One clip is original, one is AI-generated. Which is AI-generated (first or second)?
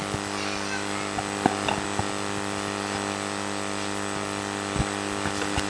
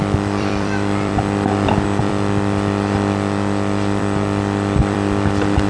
second